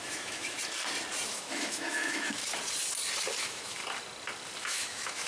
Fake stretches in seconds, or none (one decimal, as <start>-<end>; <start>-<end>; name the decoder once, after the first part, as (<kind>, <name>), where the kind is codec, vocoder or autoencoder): 0.0-0.6 (autoencoder, DAC-VAE); 1.3-2.4; 3.4-3.8; 4.6-5.3